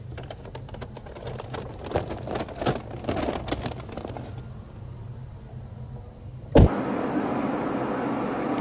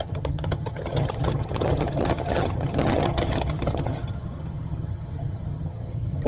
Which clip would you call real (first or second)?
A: first